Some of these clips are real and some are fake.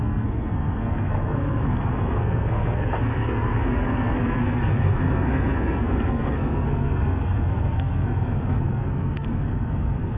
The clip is fake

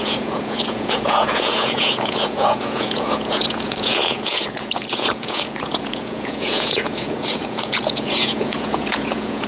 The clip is fake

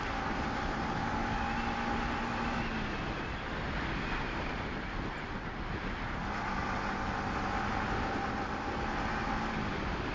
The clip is real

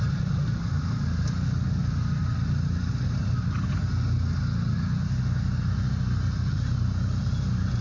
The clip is real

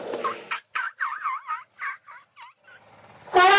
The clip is real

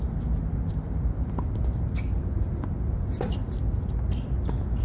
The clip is real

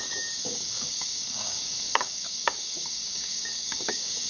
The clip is fake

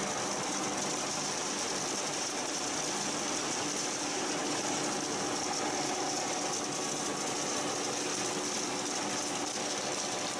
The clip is real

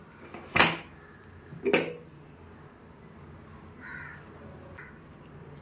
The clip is real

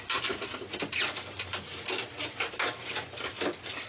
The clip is real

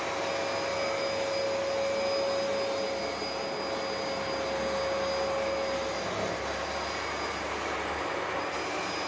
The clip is real